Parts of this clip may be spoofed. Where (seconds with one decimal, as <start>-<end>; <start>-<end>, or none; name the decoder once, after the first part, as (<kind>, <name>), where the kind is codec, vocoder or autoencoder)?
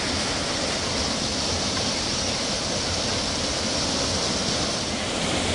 1.3-2.2 (vocoder, BigVGAN v2)